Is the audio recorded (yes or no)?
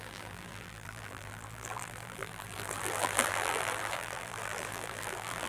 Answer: no